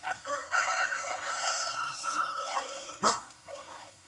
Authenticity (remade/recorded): remade